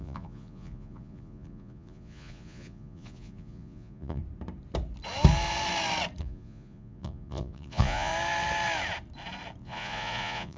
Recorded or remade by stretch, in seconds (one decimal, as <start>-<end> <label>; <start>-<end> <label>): 0.0-4.2 remade; 4.2-6.2 recorded; 6.2-8.1 remade; 8.1-9.6 recorded; 9.6-10.6 remade